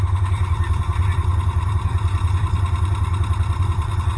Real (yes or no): no